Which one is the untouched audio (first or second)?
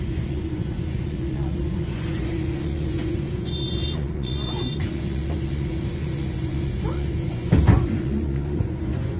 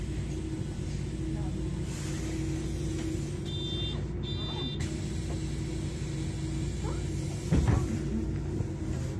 second